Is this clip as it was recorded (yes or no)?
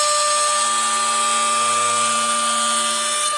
yes